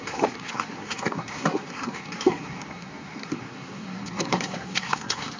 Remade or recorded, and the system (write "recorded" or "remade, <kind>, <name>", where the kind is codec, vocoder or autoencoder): remade, codec, SNAC